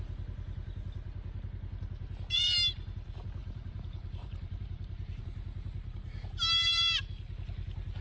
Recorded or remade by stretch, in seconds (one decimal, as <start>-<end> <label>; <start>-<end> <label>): 0.0-3.4 recorded; 3.4-5.2 remade; 5.2-8.0 recorded